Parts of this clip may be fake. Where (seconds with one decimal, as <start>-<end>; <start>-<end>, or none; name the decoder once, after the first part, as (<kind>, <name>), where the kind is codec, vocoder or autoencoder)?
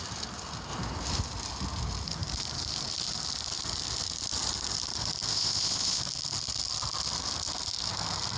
5.3-6.0 (codec, ZipCodec)